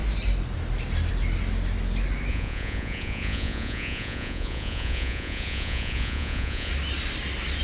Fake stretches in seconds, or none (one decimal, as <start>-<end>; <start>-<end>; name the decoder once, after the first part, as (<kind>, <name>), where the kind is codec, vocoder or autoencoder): 2.3-6.7 (vocoder, Vocos)

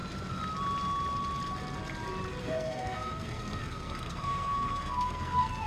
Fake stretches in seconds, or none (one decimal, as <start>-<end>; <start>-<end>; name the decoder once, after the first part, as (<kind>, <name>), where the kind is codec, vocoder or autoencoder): 2.4-5.7 (codec, SNAC)

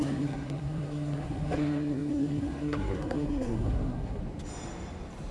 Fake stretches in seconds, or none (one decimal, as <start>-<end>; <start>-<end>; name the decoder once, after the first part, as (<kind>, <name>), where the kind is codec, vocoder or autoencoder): 0.0-4.2 (codec, SNAC)